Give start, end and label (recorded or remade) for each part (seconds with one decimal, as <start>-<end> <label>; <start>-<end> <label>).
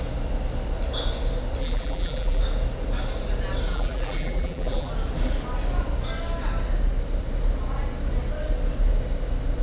0.0-1.6 recorded; 1.6-2.4 remade; 2.4-3.7 recorded; 3.7-4.9 remade; 4.9-9.6 recorded